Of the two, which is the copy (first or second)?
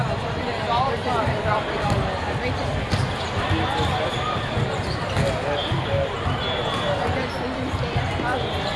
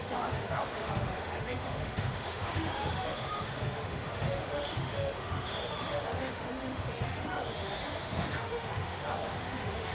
second